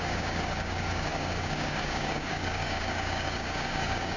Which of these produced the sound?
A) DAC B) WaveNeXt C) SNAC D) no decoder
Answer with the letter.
A